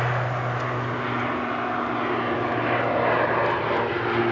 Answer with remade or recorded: recorded